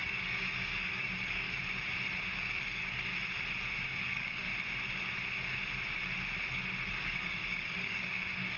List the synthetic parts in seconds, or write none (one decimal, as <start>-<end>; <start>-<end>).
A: 0.0-1.6; 2.2-3.1; 3.9-4.5; 6.9-8.6